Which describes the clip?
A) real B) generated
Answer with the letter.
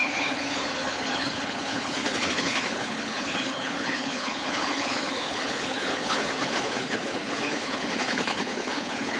B